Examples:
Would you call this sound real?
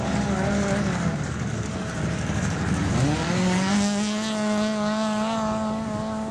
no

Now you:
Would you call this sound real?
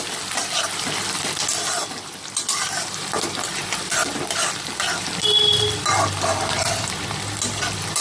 yes